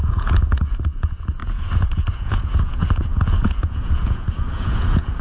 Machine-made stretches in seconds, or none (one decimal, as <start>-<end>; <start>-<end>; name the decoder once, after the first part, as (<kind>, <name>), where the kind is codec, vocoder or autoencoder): 0.0-5.2 (vocoder, Vocos)